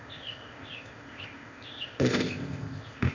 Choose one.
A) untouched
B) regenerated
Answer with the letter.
B